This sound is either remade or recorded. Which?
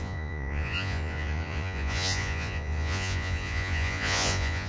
remade